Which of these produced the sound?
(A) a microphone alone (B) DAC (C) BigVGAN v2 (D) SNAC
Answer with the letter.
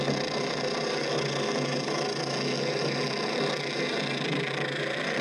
A